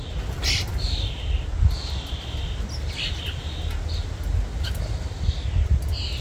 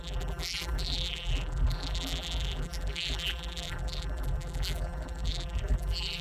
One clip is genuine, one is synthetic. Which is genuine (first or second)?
first